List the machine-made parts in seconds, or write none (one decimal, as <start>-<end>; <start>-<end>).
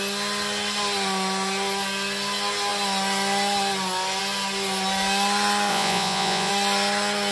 5.7-6.5